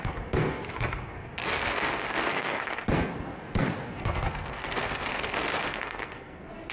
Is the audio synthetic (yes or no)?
yes